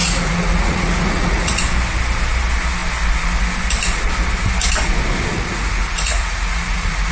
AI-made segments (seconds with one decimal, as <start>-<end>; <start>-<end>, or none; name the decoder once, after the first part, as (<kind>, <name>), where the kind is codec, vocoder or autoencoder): 0.0-1.6 (vocoder, Vocos); 5.3-7.1